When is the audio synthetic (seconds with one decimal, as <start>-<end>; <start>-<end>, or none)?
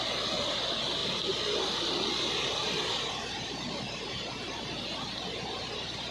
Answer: 2.6-4.6